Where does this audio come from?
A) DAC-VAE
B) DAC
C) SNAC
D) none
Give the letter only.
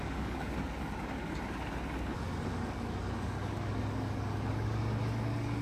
B